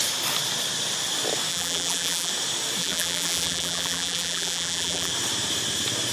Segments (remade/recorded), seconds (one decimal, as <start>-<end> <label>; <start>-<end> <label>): 0.0-1.5 recorded; 1.5-2.3 remade; 2.3-2.8 recorded; 2.8-5.1 remade; 5.1-6.1 recorded